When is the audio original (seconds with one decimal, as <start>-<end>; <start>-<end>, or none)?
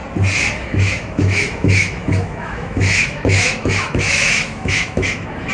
0.0-0.6